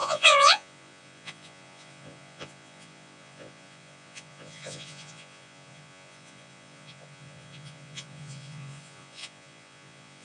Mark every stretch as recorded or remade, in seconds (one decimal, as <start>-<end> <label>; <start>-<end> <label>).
0.0-10.2 remade